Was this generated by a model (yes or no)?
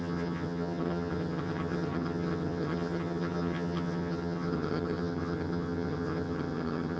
yes